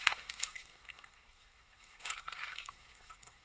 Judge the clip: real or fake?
fake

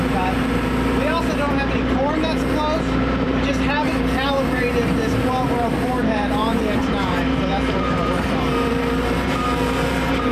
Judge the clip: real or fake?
fake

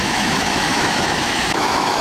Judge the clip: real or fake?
fake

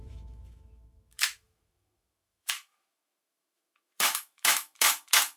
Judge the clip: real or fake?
fake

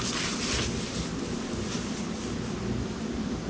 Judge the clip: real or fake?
real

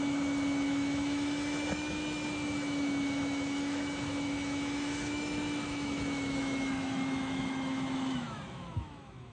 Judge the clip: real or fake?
fake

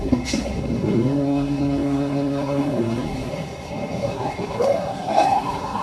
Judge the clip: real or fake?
fake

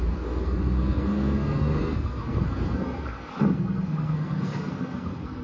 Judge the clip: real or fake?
fake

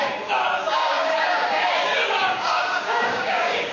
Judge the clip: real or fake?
fake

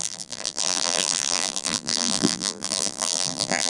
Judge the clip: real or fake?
fake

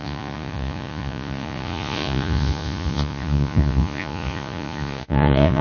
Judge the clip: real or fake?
fake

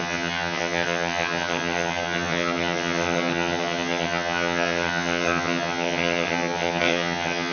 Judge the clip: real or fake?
fake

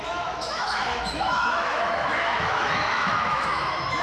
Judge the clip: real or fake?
fake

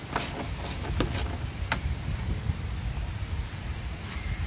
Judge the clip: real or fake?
real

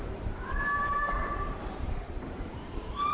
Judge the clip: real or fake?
fake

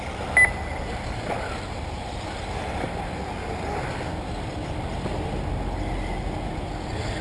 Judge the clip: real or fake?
real